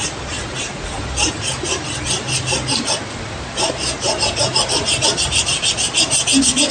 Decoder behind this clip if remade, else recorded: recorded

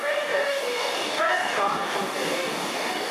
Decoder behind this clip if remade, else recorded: remade, codec, DAC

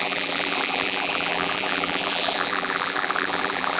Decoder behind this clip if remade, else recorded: remade, vocoder, BigVGAN v2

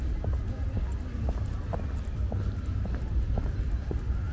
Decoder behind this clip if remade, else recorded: recorded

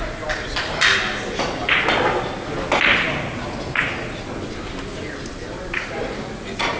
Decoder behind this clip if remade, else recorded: recorded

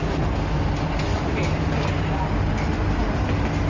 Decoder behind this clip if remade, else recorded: recorded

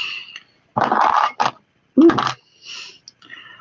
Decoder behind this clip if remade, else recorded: recorded